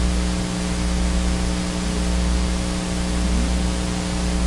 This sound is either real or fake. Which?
real